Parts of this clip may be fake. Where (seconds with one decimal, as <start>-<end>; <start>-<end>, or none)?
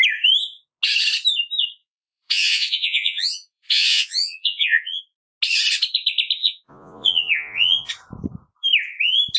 1.8-5.0; 6.4-7.9